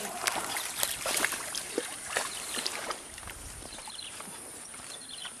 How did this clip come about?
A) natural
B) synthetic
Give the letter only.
B